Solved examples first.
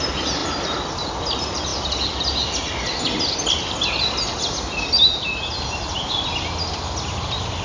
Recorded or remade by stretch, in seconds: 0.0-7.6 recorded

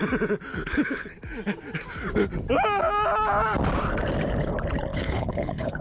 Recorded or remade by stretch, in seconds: 0.0-0.5 recorded; 0.5-1.1 remade; 1.1-4.9 recorded; 4.9-5.8 remade

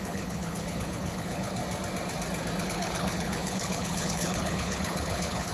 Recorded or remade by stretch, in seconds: 0.0-1.6 remade; 1.6-2.6 recorded; 2.6-5.5 remade

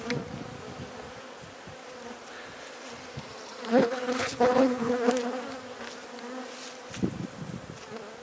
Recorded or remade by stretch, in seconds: 0.0-3.7 recorded; 3.7-4.9 remade; 4.9-8.2 recorded